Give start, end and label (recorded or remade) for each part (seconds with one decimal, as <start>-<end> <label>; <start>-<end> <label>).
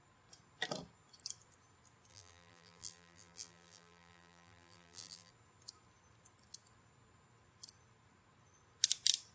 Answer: 0.0-2.1 recorded; 2.1-5.3 remade; 5.3-9.3 recorded